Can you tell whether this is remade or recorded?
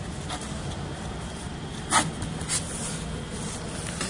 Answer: recorded